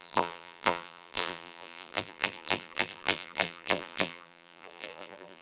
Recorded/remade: remade